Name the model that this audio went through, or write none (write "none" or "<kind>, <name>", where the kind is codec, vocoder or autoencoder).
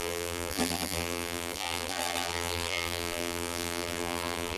vocoder, BigVGAN v2